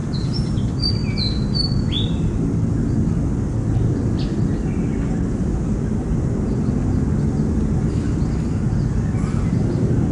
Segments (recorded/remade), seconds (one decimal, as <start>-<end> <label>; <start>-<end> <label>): 0.0-10.1 recorded